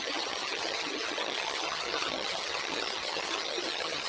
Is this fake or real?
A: fake